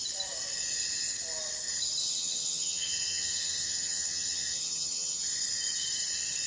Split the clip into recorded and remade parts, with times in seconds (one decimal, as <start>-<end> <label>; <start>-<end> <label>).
0.0-2.0 recorded; 2.0-5.2 remade; 5.2-6.5 recorded